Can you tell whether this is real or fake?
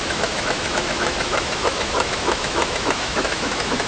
fake